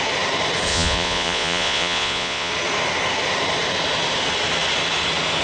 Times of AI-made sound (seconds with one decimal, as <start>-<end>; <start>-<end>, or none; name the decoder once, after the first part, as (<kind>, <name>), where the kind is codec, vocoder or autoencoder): 0.7-2.5 (vocoder, Vocos)